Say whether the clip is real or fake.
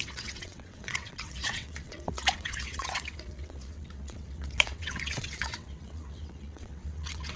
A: fake